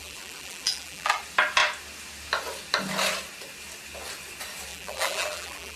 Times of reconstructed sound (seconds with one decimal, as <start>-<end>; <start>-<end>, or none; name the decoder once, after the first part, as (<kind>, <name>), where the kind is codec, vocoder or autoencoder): 0.0-1.2 (vocoder, BigVGAN v2); 4.7-5.8